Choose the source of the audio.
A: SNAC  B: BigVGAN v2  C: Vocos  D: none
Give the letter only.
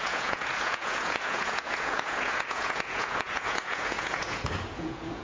C